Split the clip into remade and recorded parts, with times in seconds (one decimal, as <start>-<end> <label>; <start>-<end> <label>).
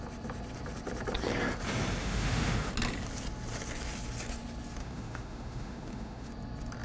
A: 0.0-2.0 recorded; 2.0-2.7 remade; 2.7-4.8 recorded; 4.8-6.3 remade; 6.3-6.8 recorded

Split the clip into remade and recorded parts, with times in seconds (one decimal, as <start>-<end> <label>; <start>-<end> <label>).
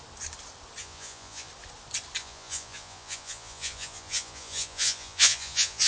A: 0.0-0.8 recorded; 0.8-1.5 remade; 1.5-2.2 recorded; 2.2-5.9 remade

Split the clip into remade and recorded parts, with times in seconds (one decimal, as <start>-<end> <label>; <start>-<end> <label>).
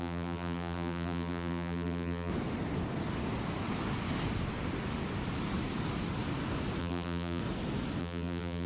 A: 0.0-2.3 remade; 2.3-6.8 recorded; 6.8-7.4 remade; 7.4-8.0 recorded; 8.0-8.7 remade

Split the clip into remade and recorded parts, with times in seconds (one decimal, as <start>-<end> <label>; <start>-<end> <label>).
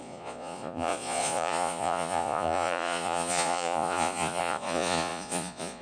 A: 0.0-5.8 remade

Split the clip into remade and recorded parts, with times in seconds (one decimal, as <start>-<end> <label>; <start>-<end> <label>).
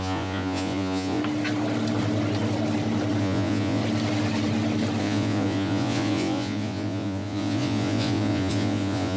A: 0.0-1.2 remade; 1.2-3.2 recorded; 3.2-3.8 remade; 3.8-5.0 recorded; 5.0-9.2 remade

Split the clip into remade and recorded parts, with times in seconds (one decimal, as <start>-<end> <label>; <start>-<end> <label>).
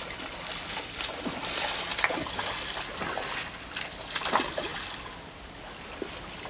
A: 0.0-6.5 recorded